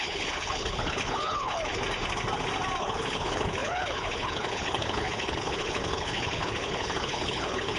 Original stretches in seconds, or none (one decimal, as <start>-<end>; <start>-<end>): 1.7-2.8